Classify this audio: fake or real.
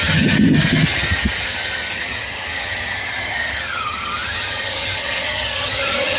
fake